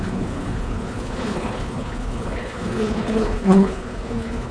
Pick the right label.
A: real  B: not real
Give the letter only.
B